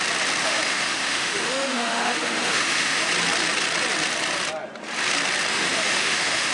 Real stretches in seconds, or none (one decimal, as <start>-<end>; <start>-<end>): 0.0-0.4; 3.1-5.5